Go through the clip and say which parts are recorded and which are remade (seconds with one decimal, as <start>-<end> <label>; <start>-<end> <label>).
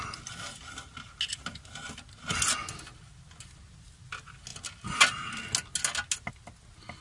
0.0-7.0 recorded